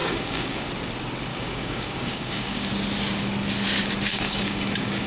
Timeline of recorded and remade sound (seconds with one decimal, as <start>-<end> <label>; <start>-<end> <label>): 0.0-0.7 remade; 0.7-1.3 recorded; 1.3-2.7 remade; 2.7-4.1 recorded; 4.1-5.1 remade